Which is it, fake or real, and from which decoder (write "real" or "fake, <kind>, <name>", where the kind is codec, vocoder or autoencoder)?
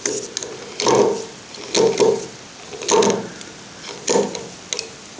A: real